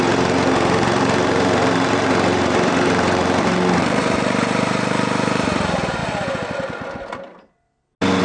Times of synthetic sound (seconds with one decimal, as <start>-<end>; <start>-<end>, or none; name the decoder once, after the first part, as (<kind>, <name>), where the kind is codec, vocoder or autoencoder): 0.0-6.0 (vocoder, BigVGAN v2)

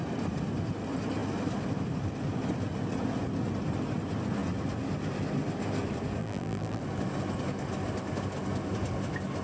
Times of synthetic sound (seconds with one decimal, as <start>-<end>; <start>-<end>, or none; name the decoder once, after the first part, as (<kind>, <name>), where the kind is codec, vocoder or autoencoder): 6.2-6.8 (vocoder, BigVGAN v2)